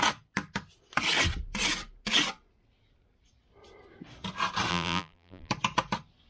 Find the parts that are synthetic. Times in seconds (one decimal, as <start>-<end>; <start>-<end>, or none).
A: 4.7-5.5